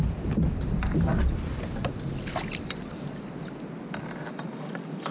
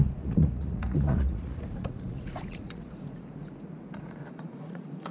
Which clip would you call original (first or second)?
first